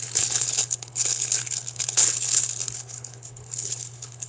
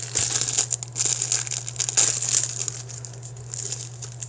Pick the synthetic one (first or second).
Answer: first